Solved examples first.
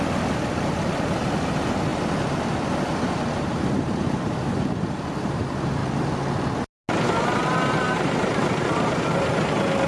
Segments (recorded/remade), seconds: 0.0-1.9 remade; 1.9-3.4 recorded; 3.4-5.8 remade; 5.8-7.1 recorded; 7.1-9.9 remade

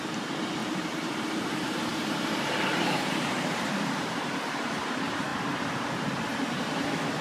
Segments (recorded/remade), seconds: 0.0-7.2 remade

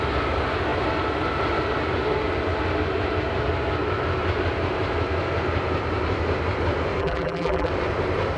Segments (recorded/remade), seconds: 0.0-7.0 recorded; 7.0-7.7 remade; 7.7-8.4 recorded

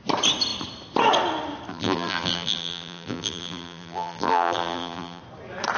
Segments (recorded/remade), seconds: 0.0-1.7 recorded; 1.7-5.2 remade; 5.2-5.8 recorded

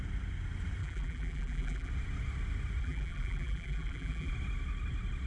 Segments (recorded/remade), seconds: 0.0-0.8 recorded; 0.8-1.9 remade; 1.9-2.8 recorded; 2.8-4.3 remade; 4.3-5.3 recorded

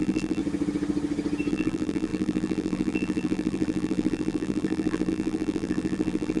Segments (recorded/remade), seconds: 0.0-0.4 remade; 0.4-1.5 recorded; 1.5-6.4 remade

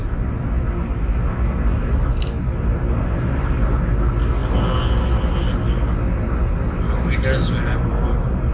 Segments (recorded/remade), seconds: 0.0-8.5 recorded

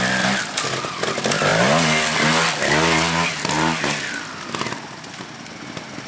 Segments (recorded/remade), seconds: 0.0-6.1 recorded